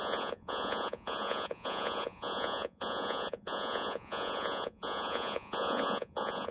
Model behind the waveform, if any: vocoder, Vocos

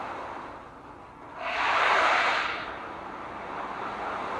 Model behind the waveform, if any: none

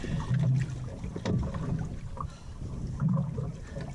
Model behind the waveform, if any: none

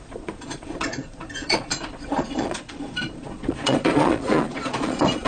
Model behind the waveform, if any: vocoder, Vocos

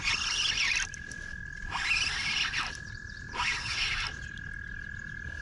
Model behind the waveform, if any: none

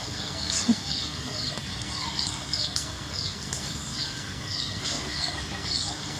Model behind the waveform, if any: codec, SNAC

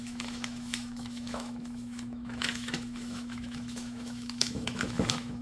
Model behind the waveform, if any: autoencoder, DAC-VAE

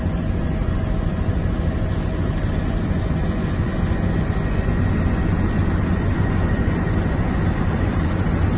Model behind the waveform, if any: vocoder, Vocos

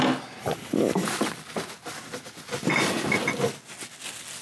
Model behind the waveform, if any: none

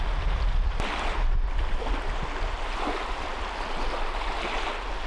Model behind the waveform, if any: none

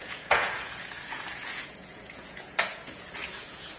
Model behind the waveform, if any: vocoder, Vocos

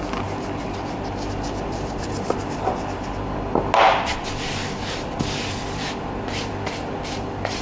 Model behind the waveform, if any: none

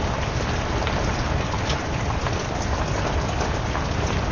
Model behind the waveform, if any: none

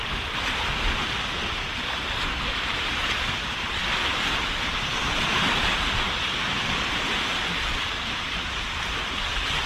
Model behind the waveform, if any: none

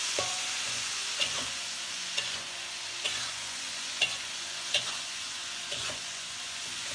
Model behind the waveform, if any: vocoder, Vocos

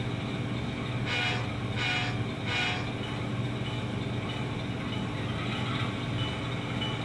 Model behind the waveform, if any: none